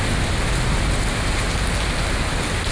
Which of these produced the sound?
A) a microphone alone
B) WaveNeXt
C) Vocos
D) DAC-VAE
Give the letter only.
A